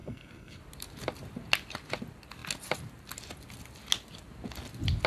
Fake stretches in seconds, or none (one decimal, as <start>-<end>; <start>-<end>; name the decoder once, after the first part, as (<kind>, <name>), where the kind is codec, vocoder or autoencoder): 0.0-0.6 (codec, SNAC)